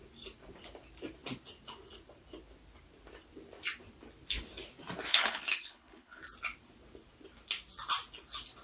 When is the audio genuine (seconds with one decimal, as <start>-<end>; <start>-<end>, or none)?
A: 0.0-5.1; 6.2-8.6